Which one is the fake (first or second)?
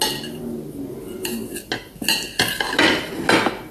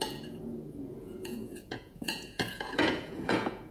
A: second